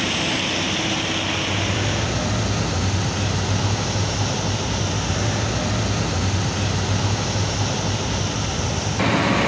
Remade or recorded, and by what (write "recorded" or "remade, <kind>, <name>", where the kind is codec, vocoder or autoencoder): recorded